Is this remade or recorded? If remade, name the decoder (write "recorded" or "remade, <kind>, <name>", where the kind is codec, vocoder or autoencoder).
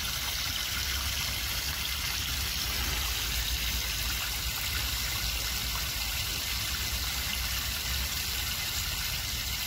recorded